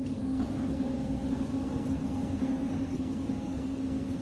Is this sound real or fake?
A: fake